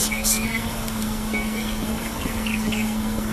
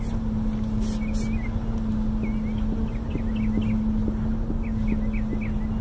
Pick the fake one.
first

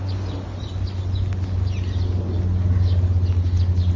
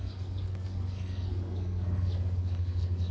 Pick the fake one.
second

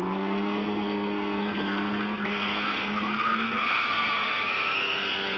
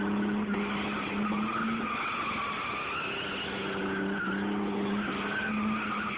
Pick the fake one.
first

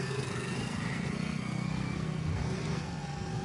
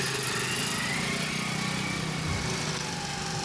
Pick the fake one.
first